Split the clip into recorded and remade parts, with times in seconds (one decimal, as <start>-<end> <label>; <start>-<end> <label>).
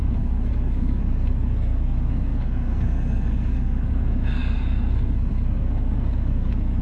0.0-6.8 remade